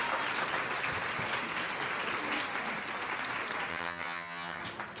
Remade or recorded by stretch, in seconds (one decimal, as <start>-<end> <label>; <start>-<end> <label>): 0.0-3.7 recorded; 3.7-4.6 remade; 4.6-5.0 recorded